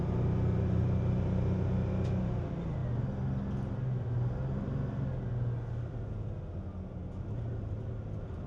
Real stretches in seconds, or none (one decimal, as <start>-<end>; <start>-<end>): 0.0-8.5